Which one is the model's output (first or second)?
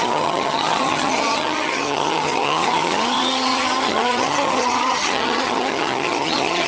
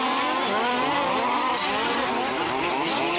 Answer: first